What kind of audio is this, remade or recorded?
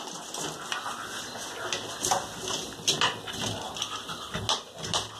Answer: recorded